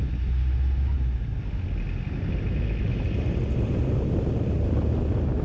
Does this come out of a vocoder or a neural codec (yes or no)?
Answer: no